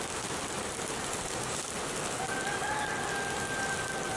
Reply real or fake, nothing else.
real